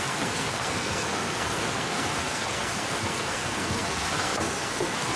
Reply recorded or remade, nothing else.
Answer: remade